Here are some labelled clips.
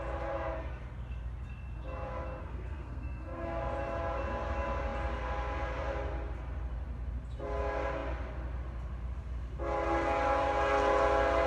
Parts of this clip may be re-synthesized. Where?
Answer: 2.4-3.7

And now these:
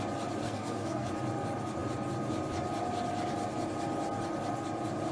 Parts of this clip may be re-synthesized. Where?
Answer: 0.4-1.1

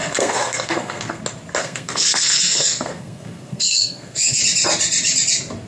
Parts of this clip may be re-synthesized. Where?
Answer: 0.0-1.2; 1.6-4.4

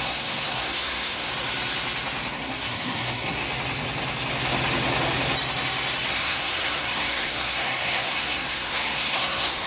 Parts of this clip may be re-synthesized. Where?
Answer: 0.0-1.3; 2.3-3.4; 6.1-9.7

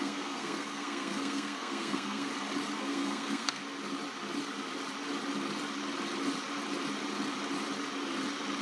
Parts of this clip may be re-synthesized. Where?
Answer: 0.0-2.3; 2.8-3.6

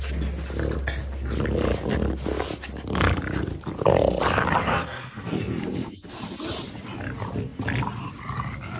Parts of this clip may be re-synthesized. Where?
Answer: 4.7-6.1

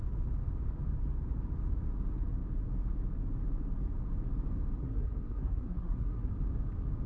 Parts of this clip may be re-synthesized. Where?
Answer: 4.8-6.3